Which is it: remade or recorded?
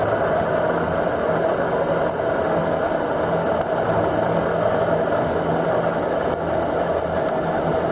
recorded